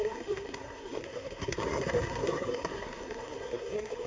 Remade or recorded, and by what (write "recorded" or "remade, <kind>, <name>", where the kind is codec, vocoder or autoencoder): remade, codec, SNAC